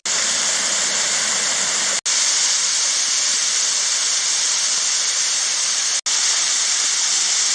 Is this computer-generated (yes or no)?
no